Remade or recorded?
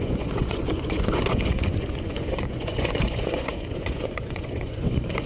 remade